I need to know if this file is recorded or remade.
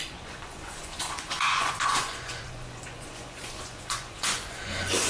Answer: remade